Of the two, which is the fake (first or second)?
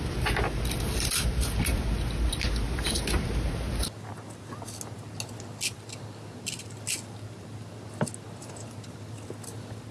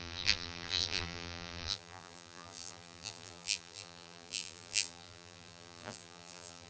second